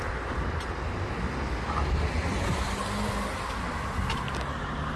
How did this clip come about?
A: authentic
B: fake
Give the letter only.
A